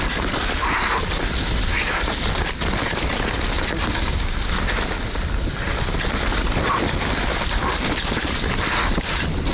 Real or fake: real